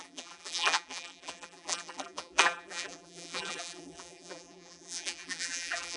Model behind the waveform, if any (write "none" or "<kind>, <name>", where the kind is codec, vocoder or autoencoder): vocoder, BigVGAN v2